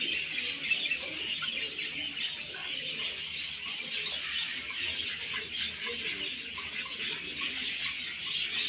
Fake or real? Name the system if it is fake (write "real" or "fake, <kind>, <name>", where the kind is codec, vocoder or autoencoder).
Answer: real